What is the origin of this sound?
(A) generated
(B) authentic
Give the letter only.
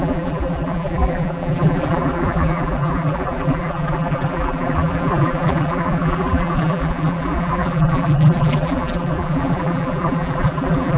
A